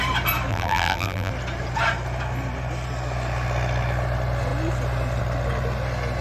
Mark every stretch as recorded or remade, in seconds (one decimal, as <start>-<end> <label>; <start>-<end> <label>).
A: 0.0-0.5 recorded; 0.5-1.3 remade; 1.3-6.2 recorded